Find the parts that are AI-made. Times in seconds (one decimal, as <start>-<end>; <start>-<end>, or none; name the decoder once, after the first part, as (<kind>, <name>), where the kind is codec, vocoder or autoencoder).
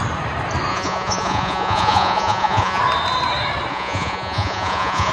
0.7-2.8 (vocoder, Vocos); 3.7-5.1